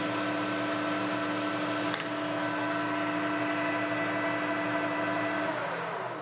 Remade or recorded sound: recorded